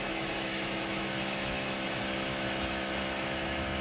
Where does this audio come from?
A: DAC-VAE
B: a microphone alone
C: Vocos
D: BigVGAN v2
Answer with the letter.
A